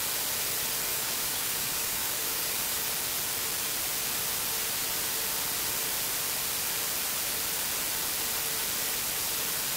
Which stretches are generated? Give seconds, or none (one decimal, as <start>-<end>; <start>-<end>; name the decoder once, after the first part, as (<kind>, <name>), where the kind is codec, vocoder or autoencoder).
0.9-2.8 (codec, DAC)